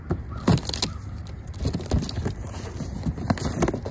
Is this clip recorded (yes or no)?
yes